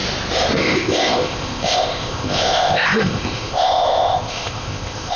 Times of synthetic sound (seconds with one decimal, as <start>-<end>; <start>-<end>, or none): 0.6-5.2